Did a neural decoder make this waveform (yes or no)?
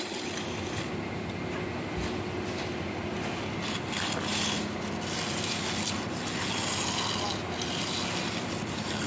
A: no